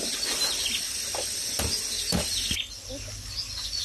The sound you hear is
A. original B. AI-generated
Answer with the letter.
A